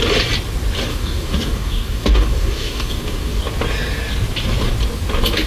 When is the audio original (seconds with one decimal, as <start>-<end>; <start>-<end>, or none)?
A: 0.0-0.9; 3.4-5.5